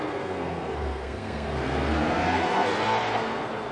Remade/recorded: remade